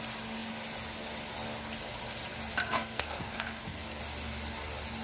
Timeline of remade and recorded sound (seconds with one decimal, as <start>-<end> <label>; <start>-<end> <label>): 0.0-2.6 recorded; 2.6-4.0 remade; 4.0-5.0 recorded